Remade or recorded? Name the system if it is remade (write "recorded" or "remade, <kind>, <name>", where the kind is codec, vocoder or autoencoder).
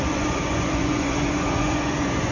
remade, vocoder, Vocos